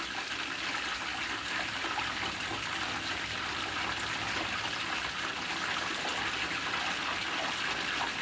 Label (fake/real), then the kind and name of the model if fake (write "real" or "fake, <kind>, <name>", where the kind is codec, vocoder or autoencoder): real